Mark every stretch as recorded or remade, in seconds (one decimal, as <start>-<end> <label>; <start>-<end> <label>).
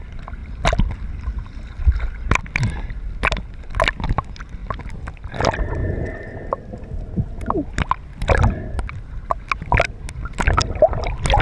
0.0-11.4 recorded